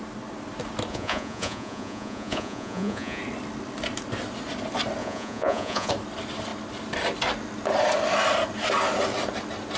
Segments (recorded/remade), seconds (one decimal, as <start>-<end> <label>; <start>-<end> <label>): 0.0-0.9 recorded; 0.9-3.2 remade; 3.2-5.0 recorded; 5.0-5.9 remade; 5.9-9.8 recorded